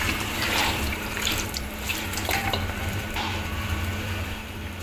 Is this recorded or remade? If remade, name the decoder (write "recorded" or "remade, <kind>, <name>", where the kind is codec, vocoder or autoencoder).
remade, vocoder, BigVGAN v2